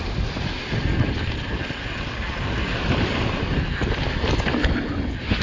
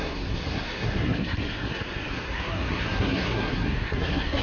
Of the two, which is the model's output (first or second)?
second